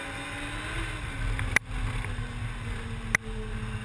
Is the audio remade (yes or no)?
no